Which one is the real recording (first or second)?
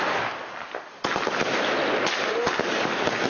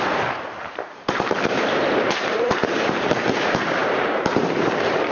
first